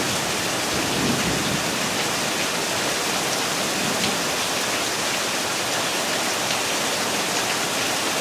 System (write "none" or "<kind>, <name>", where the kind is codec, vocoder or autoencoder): none